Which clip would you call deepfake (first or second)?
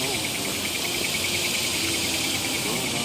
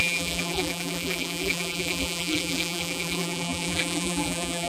second